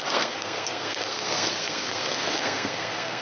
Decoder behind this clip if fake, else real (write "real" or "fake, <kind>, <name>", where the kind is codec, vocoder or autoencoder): fake, codec, SNAC